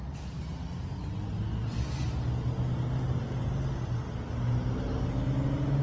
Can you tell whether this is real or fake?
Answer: real